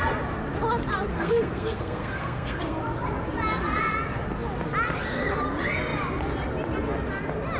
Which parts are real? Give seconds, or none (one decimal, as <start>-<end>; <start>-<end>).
0.0-1.1; 2.8-7.6